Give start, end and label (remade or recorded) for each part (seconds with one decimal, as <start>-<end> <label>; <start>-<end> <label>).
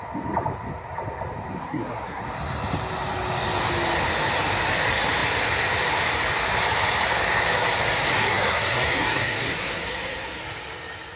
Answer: 0.0-1.6 recorded; 1.6-2.2 remade; 2.2-8.2 recorded; 8.2-10.4 remade; 10.4-11.2 recorded